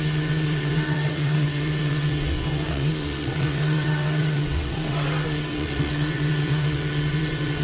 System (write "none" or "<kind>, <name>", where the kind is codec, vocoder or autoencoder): vocoder, WaveNeXt